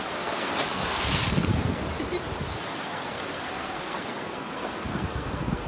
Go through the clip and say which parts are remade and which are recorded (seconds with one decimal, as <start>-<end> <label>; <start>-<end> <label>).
0.0-1.8 remade; 1.8-2.6 recorded; 2.6-5.7 remade